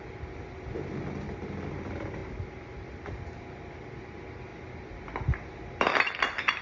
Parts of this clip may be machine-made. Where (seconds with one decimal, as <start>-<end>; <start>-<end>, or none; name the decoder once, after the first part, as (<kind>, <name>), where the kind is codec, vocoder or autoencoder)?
none